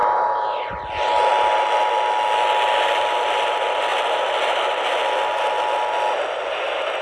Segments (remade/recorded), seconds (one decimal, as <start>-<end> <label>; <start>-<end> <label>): 0.0-0.7 remade; 0.7-7.0 recorded